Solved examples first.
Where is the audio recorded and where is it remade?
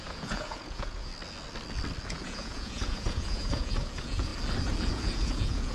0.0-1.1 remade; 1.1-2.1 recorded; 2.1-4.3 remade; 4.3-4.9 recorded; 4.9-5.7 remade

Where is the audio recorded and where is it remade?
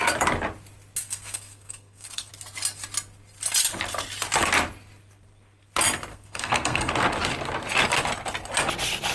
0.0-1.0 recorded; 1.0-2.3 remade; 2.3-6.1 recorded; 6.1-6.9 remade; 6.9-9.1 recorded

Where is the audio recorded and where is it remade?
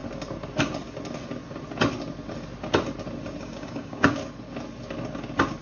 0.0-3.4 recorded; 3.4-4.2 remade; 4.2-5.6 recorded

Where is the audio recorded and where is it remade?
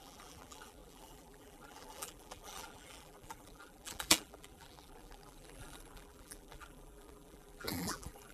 0.0-8.3 remade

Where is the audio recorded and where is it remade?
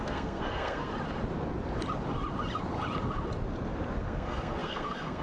0.0-0.9 remade; 0.9-4.0 recorded; 4.0-5.2 remade